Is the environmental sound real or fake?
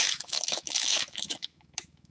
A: fake